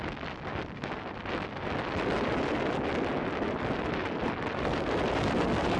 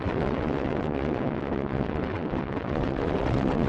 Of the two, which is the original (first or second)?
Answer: first